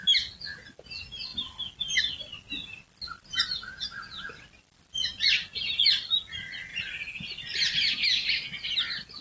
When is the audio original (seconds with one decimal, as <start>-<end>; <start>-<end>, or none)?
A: 0.0-9.2

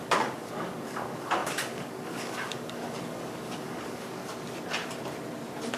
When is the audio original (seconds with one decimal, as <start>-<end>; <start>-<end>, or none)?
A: 4.2-5.8

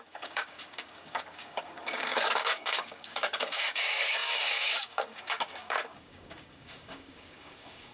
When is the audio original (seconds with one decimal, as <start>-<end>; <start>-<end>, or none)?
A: none

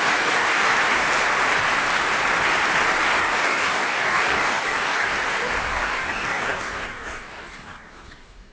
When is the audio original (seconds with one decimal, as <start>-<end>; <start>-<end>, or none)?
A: 0.7-3.2; 5.1-5.6

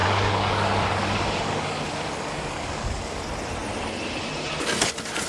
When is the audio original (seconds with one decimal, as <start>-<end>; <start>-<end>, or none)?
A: 3.2-5.3

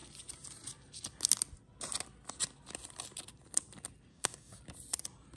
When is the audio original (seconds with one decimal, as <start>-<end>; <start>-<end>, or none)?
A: 0.0-4.1; 4.6-5.4

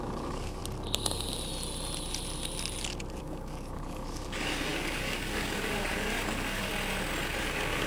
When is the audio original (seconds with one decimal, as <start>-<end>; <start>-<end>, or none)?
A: 0.6-3.2; 6.7-7.4